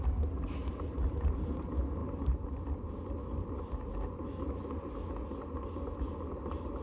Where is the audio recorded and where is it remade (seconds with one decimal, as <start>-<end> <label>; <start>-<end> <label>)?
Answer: 0.0-6.8 recorded